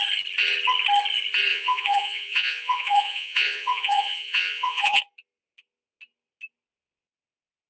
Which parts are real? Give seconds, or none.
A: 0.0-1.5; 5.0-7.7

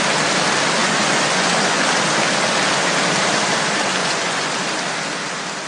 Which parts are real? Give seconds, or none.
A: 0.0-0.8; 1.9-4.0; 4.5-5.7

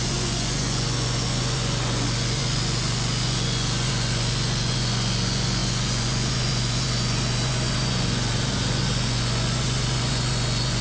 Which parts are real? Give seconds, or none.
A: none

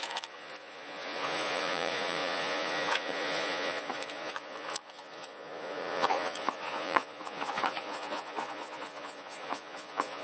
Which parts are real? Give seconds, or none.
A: none